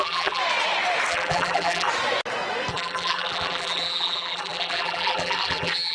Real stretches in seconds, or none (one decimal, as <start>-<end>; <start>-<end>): 0.4-1.1; 1.9-2.7